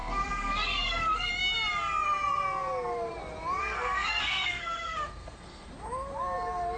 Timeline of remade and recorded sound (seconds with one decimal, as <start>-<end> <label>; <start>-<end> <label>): 0.0-1.3 remade; 1.3-3.6 recorded; 3.6-5.7 remade; 5.7-6.8 recorded